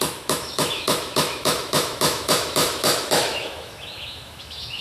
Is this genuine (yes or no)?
no